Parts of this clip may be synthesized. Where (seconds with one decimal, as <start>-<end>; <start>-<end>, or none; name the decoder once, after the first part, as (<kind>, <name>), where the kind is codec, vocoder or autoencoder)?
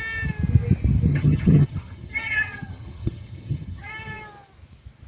1.1-3.9 (vocoder, HiFi-GAN)